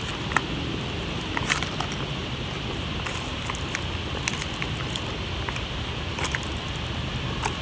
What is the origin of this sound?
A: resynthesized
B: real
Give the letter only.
B